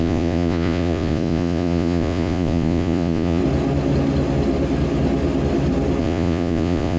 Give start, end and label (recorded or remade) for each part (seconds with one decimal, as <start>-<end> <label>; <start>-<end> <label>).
0.0-3.4 remade; 3.4-6.0 recorded; 6.0-7.0 remade